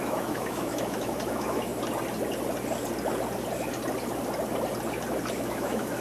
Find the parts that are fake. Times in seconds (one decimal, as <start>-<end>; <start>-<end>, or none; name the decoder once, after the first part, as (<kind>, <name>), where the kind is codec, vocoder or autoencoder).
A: 0.0-1.7 (autoencoder, DAC-VAE); 5.3-6.0